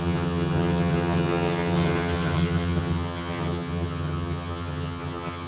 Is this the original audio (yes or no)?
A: no